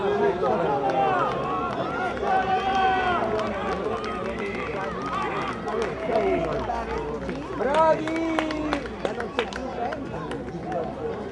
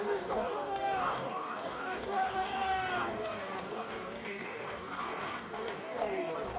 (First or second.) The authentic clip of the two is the first